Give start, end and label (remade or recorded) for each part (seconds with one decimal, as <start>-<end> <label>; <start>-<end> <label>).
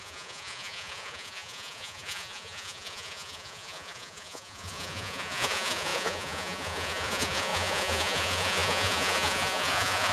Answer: 0.0-10.1 remade